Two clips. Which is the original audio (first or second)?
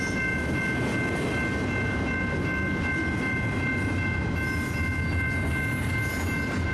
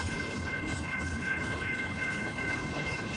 first